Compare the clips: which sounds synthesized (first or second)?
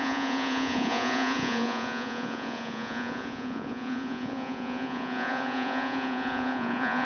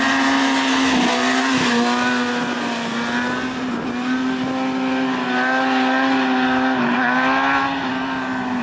first